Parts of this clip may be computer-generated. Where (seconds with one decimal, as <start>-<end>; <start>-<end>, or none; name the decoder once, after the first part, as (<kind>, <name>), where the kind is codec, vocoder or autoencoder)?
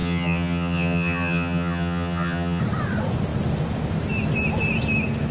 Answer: 0.0-2.6 (vocoder, HiFi-GAN)